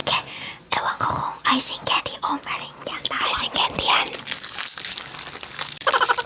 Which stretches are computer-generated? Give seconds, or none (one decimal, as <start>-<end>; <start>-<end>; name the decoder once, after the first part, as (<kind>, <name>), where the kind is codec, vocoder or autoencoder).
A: 0.0-2.0 (vocoder, BigVGAN v2)